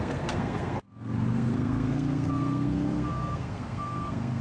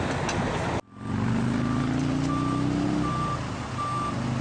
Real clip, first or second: second